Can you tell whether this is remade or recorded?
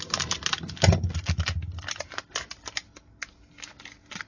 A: recorded